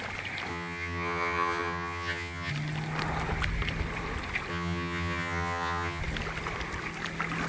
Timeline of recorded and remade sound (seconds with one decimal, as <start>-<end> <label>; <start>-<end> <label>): 0.0-0.5 recorded; 0.5-2.5 remade; 2.5-4.5 recorded; 4.5-6.0 remade; 6.0-7.5 recorded